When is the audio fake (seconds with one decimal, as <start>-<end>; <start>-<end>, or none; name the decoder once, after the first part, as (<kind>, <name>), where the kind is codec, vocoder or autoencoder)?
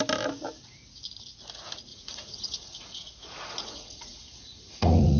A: 1.9-5.2 (vocoder, Vocos)